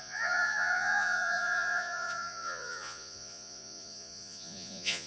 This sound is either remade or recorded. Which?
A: remade